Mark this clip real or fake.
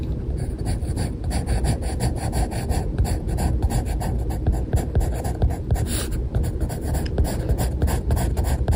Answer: real